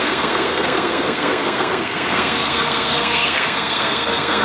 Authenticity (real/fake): fake